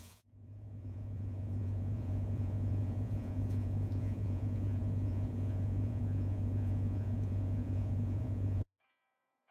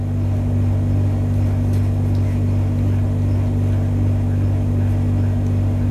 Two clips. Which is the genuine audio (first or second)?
second